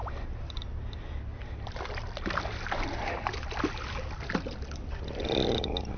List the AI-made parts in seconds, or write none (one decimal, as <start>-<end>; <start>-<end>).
none